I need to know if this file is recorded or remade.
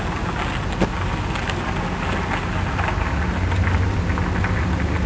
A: recorded